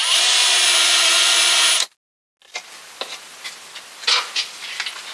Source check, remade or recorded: recorded